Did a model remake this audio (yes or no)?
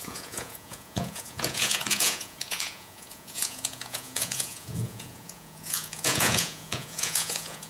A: yes